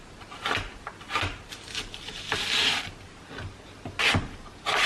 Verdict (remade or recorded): recorded